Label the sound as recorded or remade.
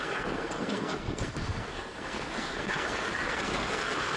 remade